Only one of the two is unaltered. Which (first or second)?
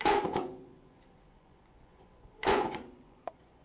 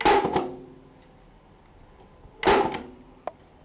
second